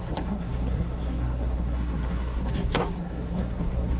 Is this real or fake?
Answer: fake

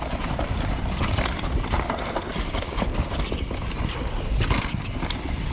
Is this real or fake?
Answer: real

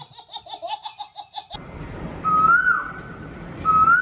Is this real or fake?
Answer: real